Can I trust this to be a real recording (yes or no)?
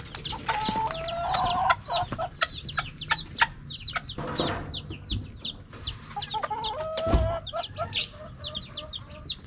yes